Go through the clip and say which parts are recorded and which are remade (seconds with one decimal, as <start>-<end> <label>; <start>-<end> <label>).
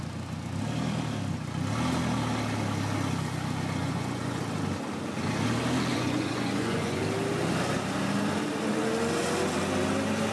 0.0-3.8 recorded; 3.8-4.4 remade; 4.4-5.9 recorded; 5.9-7.0 remade; 7.0-10.3 recorded